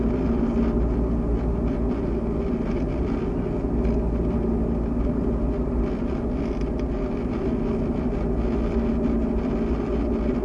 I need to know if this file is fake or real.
real